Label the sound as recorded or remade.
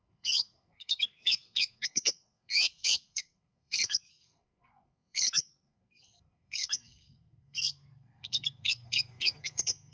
remade